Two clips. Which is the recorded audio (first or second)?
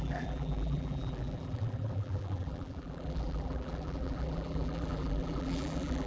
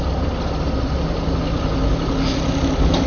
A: second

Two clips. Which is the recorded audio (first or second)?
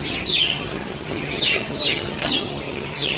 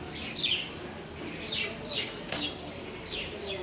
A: second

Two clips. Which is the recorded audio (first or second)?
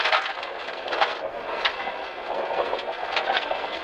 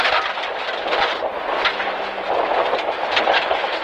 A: second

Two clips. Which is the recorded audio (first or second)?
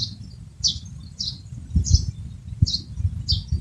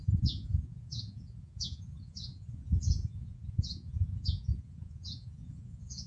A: first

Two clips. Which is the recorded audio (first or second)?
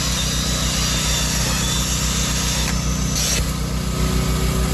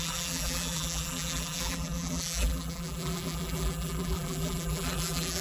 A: first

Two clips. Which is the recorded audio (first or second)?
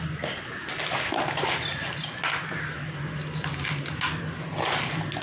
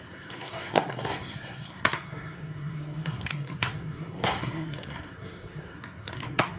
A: first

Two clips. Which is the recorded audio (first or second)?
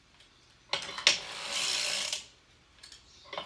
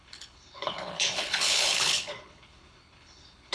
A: first